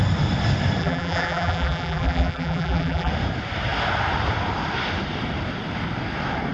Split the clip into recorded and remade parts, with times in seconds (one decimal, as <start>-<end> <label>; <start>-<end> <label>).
0.0-0.8 recorded; 0.8-3.1 remade; 3.1-6.5 recorded